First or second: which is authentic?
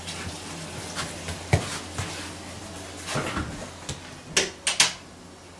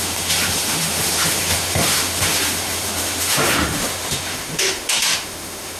first